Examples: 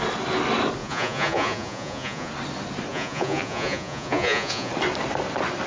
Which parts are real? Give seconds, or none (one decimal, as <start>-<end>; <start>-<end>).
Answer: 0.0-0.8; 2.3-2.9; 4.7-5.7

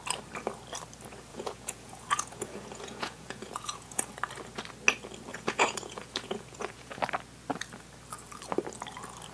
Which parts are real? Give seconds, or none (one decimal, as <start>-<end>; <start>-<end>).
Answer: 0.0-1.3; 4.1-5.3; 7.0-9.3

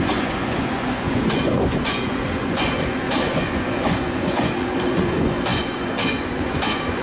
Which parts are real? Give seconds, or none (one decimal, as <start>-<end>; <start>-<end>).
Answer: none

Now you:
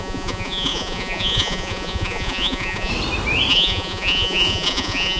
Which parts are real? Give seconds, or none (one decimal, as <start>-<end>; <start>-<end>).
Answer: 2.9-3.5